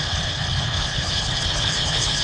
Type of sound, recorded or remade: remade